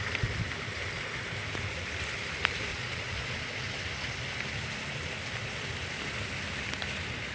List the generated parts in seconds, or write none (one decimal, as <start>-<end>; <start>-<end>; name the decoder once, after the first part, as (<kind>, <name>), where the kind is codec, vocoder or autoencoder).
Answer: 2.7-3.6 (vocoder, Vocos)